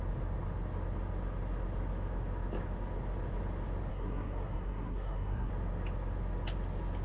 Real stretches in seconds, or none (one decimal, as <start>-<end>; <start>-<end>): 0.0-3.9; 5.5-7.0